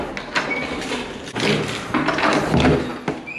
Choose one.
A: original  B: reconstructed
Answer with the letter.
A